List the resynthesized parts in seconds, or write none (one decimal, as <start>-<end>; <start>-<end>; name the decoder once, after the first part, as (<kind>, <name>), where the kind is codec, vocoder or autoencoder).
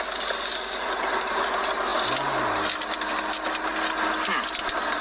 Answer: none